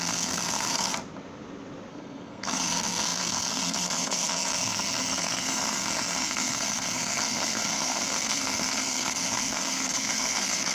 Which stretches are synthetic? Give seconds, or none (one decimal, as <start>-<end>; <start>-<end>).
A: 0.0-0.9; 1.9-10.7